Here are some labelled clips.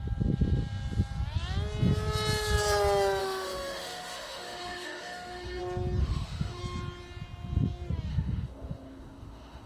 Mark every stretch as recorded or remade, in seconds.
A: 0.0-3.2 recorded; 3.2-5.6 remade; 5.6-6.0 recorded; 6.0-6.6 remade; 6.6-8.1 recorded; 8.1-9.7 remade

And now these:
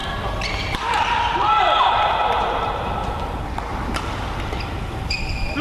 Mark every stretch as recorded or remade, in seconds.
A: 0.0-5.6 remade

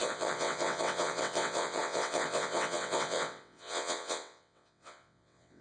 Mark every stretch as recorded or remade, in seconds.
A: 0.0-5.6 remade

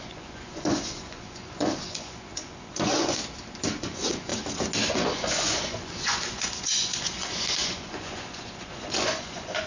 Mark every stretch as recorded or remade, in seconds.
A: 0.0-3.2 remade; 3.2-3.8 recorded; 3.8-4.3 remade; 4.3-4.9 recorded; 4.9-9.7 remade

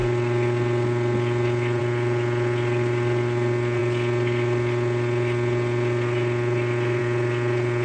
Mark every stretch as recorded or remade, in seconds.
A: 0.0-7.8 recorded